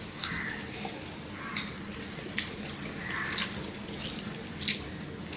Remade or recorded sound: recorded